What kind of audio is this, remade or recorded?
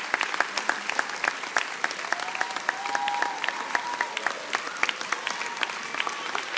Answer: recorded